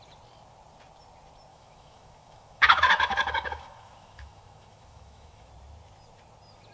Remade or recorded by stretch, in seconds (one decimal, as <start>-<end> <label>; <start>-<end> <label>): 0.0-1.5 recorded; 1.5-5.5 remade; 5.5-6.7 recorded